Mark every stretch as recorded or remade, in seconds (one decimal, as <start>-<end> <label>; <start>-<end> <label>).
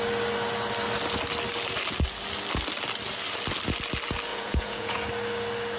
0.0-4.3 recorded; 4.3-5.0 remade; 5.0-5.8 recorded